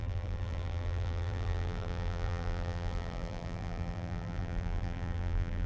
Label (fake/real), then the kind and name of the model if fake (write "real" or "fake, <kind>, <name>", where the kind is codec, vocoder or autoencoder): fake, vocoder, BigVGAN v2